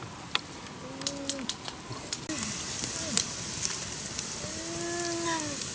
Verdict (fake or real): real